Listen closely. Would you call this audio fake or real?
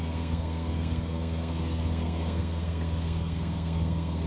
fake